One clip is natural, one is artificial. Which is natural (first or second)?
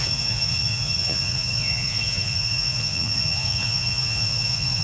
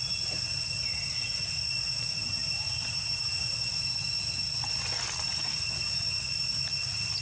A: second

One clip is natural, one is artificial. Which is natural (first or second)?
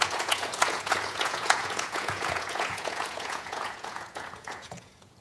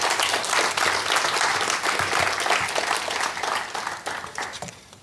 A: second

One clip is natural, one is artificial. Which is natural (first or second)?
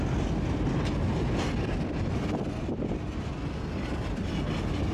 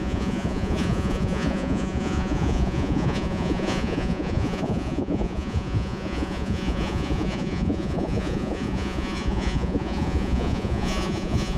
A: first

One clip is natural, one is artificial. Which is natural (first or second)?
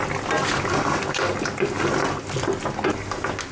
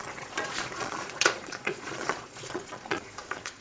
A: first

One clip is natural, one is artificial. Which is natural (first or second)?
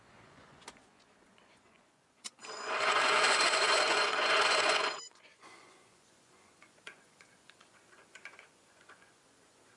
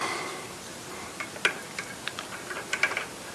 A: second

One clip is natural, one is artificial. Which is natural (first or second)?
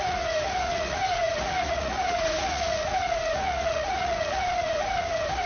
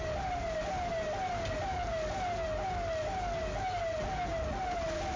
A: second